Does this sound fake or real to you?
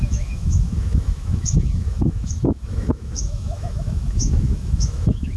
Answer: fake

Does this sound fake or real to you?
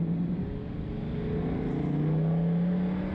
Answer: real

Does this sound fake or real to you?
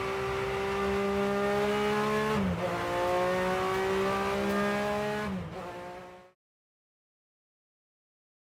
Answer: real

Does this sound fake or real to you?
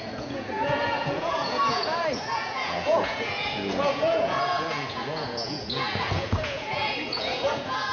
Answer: fake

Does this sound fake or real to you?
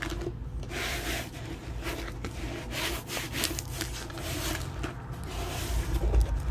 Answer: real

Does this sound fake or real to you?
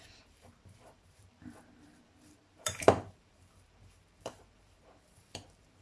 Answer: fake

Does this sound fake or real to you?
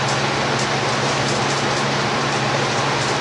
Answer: real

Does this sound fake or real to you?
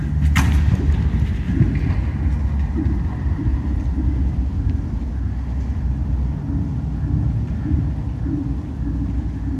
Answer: real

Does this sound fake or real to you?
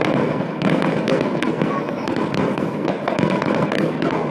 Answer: fake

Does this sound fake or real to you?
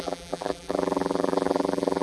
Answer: fake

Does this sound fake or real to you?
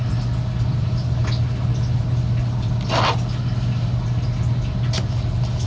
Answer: real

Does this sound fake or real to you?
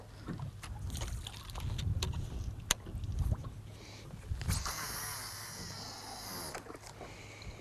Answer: real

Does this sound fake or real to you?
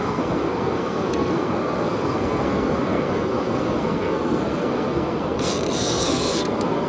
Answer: fake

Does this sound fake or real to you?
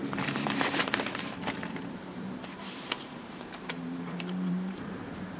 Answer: fake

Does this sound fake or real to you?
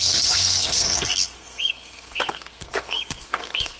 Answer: fake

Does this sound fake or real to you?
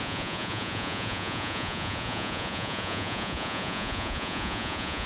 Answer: fake